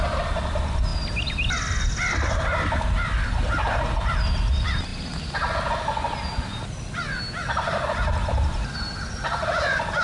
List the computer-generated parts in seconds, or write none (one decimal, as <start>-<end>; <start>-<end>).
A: none